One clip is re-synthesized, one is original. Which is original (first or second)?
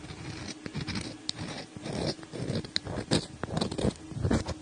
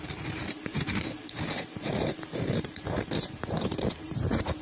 first